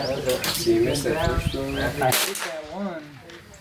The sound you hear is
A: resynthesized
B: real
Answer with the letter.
B